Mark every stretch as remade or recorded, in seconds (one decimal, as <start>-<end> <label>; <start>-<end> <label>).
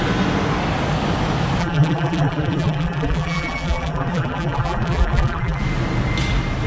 0.0-1.6 recorded; 1.6-5.6 remade; 5.6-6.7 recorded